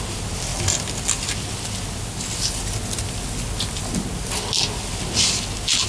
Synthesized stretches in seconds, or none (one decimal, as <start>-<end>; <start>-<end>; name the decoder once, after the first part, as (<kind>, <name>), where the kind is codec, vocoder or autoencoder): none